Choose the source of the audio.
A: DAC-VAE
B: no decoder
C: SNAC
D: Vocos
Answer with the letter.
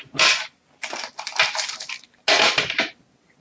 B